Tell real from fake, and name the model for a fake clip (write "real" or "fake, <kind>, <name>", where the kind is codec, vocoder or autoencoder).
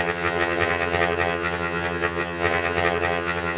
fake, vocoder, HiFi-GAN